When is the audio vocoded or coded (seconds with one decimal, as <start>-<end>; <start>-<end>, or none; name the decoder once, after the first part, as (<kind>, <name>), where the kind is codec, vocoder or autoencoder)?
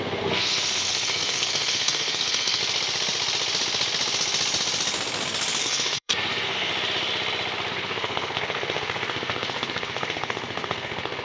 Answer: 0.0-2.6 (codec, SNAC); 5.6-6.7; 7.7-11.2